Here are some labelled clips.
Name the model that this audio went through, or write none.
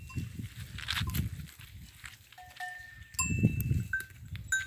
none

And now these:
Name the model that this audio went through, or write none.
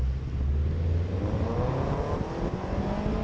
none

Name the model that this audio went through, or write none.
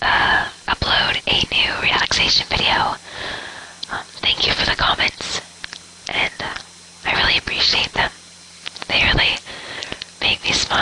none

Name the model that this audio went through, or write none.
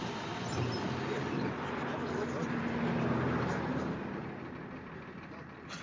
vocoder, BigVGAN v2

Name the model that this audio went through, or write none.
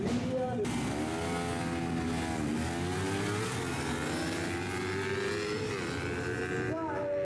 none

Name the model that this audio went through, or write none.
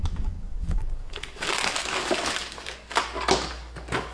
codec, DAC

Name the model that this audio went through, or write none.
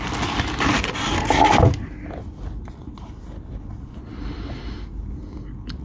none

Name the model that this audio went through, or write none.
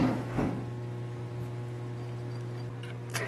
none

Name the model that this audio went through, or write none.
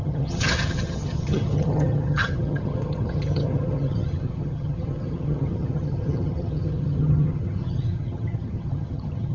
vocoder, HiFi-GAN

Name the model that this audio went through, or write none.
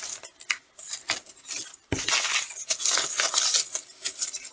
none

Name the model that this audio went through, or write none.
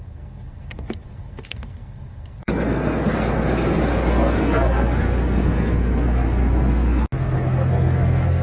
codec, SNAC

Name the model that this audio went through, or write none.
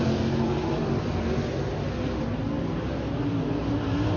none